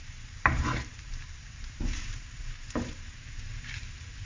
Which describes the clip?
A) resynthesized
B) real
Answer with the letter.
A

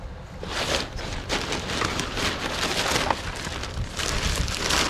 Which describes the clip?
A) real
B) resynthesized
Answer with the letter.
A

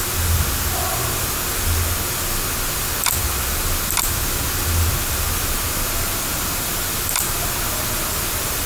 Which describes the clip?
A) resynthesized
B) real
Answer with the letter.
B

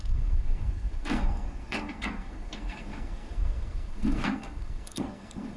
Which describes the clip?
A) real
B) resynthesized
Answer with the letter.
B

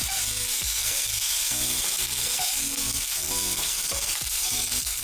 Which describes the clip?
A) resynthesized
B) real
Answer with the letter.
A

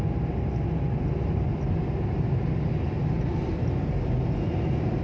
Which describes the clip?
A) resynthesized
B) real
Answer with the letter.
B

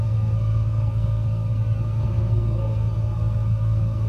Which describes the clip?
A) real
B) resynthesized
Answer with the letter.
B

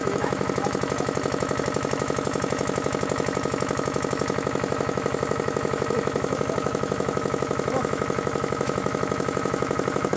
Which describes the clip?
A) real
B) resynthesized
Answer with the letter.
B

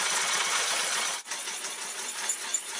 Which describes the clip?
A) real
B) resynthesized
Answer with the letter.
B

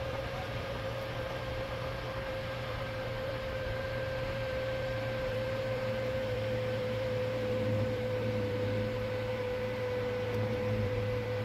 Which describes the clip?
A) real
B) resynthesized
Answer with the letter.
B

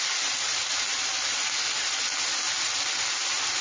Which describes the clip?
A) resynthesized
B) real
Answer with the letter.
B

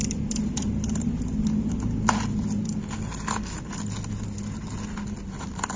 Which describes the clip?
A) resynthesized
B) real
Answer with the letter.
B